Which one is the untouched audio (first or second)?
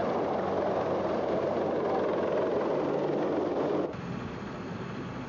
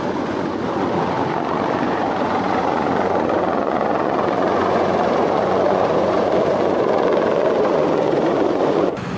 first